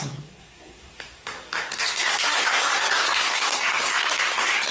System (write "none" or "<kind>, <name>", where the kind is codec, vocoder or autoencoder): codec, SNAC